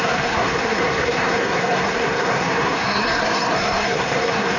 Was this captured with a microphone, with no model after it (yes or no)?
no